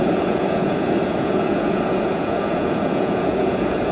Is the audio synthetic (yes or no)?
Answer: yes